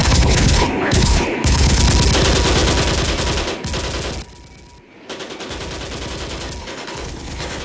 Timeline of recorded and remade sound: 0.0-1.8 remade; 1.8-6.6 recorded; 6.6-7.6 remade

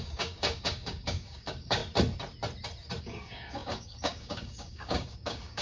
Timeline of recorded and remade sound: 0.0-1.8 remade; 1.8-3.0 recorded; 3.0-5.6 remade

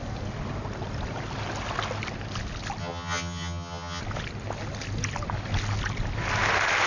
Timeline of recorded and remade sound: 0.0-2.8 recorded; 2.8-4.0 remade; 4.0-6.9 recorded

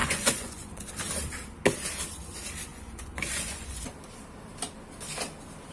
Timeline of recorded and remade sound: 0.0-0.9 remade; 0.9-2.7 recorded; 2.7-3.8 remade; 3.8-5.7 recorded

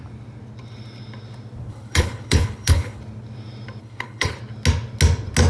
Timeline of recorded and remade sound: 0.0-1.7 recorded; 1.7-3.0 remade; 3.0-3.8 recorded; 3.8-4.4 remade; 4.4-5.5 recorded

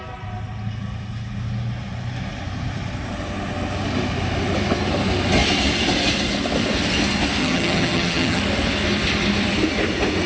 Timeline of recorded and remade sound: 0.0-7.4 recorded; 7.4-8.4 remade; 8.4-10.3 recorded

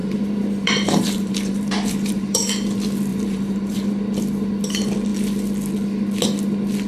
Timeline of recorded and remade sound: 0.0-2.5 remade; 2.5-3.1 recorded; 3.1-3.9 remade; 3.9-6.9 recorded